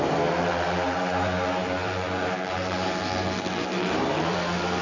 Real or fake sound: fake